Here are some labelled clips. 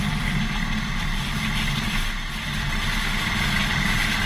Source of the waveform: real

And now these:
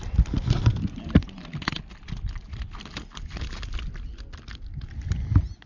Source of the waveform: real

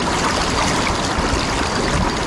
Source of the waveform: real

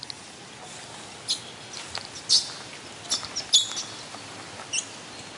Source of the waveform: real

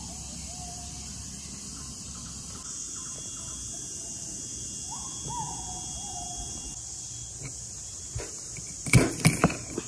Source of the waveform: real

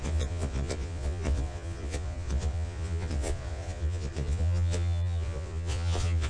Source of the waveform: fake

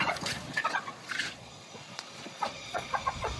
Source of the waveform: fake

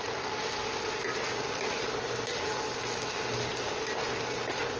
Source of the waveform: real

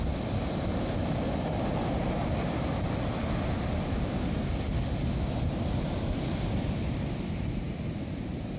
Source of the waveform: real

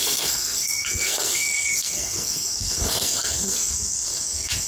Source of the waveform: fake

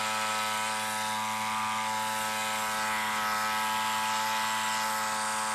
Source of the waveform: real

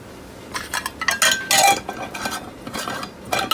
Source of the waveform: real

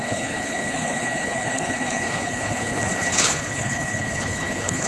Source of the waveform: fake